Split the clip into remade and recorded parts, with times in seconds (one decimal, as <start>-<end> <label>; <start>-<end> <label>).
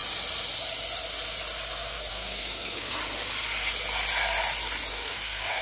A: 0.0-2.1 recorded; 2.1-3.0 remade; 3.0-4.9 recorded; 4.9-5.6 remade